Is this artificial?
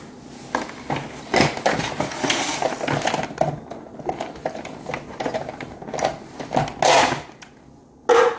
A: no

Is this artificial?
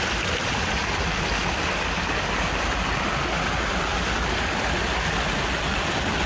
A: no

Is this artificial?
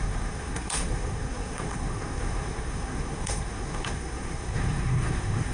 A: yes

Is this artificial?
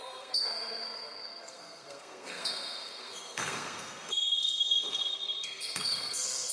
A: yes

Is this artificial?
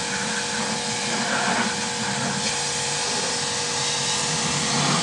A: no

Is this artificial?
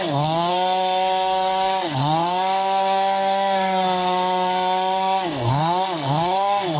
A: yes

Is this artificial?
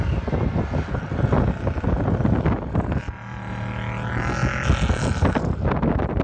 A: no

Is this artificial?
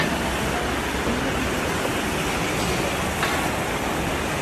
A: no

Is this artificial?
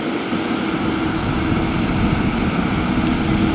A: no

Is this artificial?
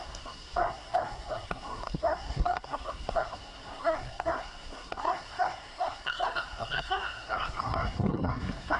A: yes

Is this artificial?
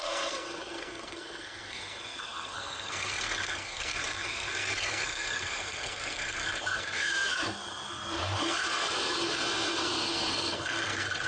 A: yes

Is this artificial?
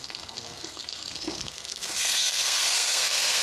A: yes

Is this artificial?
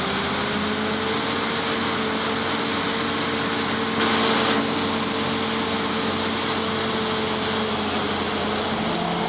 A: no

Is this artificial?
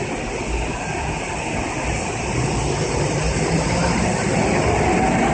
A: no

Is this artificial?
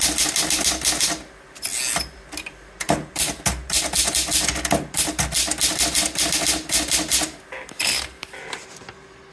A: no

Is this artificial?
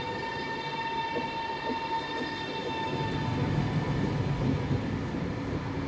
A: no